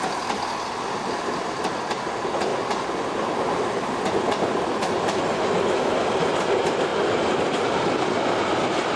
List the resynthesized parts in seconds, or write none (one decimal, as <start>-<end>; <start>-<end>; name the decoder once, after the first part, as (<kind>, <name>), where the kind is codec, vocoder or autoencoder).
2.5-5.2 (vocoder, BigVGAN v2); 6.9-9.0